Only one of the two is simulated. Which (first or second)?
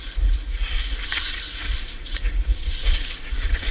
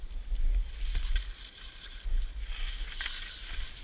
first